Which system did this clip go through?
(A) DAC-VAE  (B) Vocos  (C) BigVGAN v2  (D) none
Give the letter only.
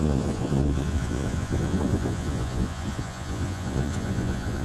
B